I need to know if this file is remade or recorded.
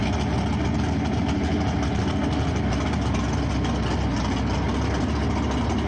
recorded